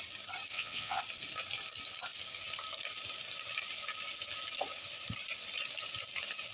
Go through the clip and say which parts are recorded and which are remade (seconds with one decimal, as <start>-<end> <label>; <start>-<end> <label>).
0.0-0.5 recorded; 0.5-1.0 remade; 1.0-6.5 recorded